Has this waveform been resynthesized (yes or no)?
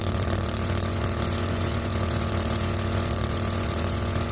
yes